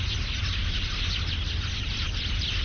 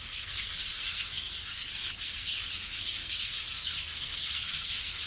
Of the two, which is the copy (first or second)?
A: second